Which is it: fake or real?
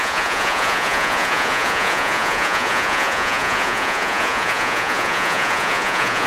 fake